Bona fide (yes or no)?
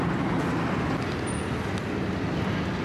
yes